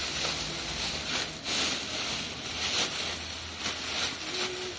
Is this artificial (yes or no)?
no